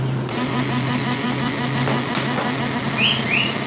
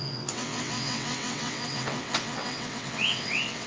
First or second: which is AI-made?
second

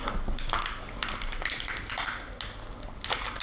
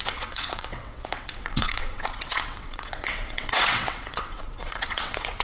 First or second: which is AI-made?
second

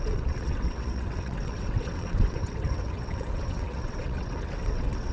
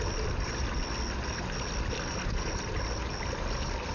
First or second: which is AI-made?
first